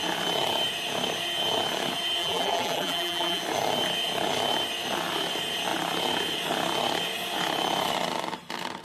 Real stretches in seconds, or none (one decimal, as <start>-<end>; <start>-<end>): 0.0-2.2; 3.4-8.8